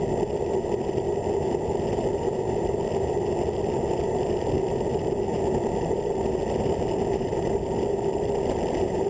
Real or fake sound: real